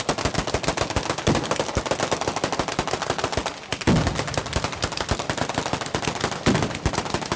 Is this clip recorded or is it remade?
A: recorded